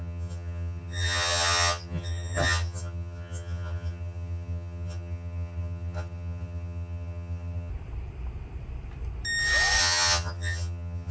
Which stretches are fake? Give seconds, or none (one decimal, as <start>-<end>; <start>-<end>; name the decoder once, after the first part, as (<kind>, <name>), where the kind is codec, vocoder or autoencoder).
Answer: 0.0-7.7 (vocoder, HiFi-GAN); 9.8-11.1